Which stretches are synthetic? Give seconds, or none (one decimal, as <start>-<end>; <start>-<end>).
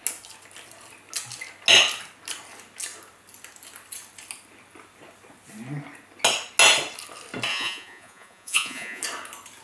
7.5-9.0